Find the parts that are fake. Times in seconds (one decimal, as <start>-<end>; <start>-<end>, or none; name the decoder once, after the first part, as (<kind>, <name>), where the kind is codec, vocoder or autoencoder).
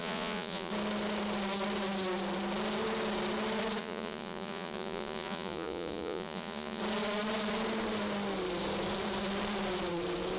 0.0-0.7 (vocoder, Vocos); 3.8-6.8